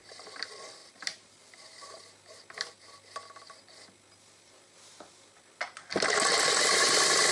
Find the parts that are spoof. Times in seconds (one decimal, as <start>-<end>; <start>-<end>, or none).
0.8-1.4